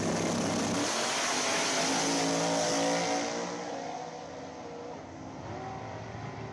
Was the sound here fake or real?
real